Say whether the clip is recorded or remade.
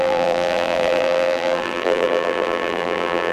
remade